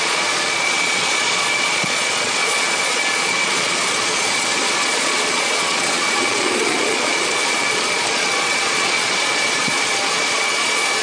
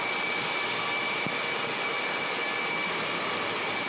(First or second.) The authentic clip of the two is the second